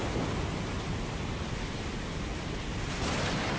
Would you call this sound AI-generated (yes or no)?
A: no